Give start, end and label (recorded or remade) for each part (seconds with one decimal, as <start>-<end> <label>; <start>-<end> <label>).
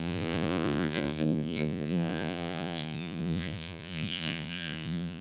0.0-5.2 remade